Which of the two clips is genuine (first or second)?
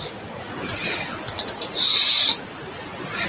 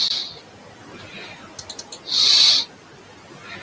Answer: second